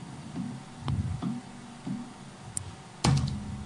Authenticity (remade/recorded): recorded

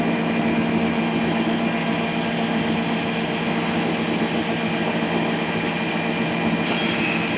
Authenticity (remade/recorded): recorded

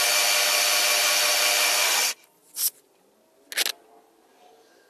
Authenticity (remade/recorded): recorded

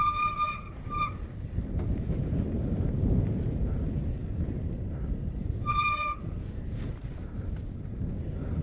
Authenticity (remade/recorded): remade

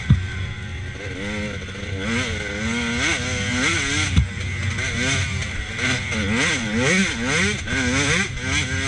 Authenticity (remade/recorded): recorded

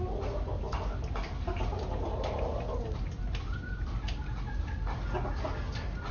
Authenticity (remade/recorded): recorded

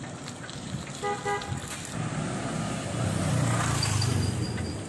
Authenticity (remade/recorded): recorded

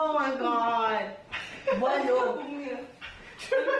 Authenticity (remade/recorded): recorded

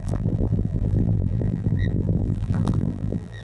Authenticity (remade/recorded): remade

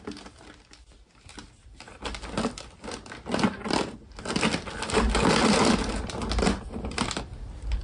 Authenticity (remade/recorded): recorded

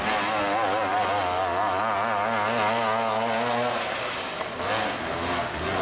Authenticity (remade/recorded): recorded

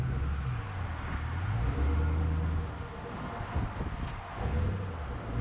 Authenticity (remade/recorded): recorded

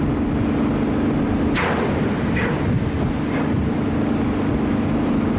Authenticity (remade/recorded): recorded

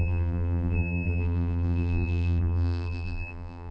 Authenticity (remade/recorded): remade